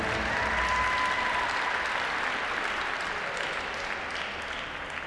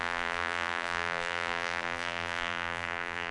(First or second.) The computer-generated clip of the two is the second